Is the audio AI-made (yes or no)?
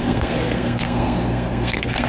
yes